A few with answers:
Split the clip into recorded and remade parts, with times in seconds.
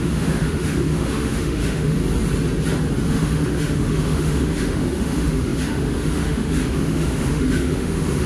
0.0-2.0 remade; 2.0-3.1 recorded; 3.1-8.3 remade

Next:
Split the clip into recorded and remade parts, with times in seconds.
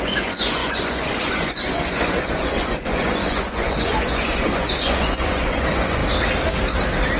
0.0-6.0 remade; 6.0-7.2 recorded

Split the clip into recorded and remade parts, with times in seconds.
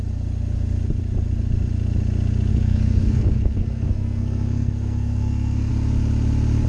0.0-2.5 recorded; 2.5-5.7 remade; 5.7-6.7 recorded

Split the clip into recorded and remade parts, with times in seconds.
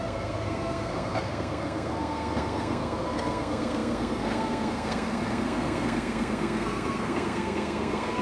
0.0-8.2 remade